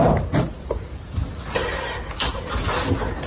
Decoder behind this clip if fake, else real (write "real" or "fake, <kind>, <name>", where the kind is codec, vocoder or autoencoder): real